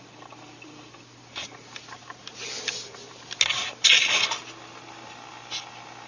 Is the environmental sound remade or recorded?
recorded